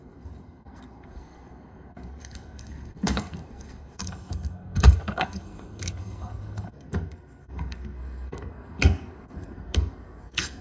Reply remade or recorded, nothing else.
remade